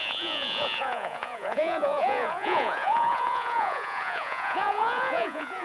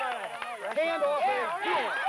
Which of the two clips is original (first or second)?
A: second